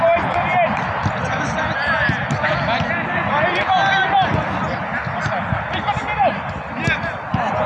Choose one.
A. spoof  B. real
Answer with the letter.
B